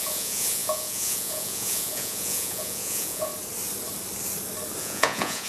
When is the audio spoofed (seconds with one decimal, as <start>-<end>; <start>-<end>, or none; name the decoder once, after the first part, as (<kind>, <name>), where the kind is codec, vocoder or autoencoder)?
0.0-3.3 (vocoder, Vocos); 4.8-5.5